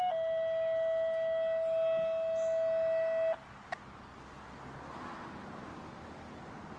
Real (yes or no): yes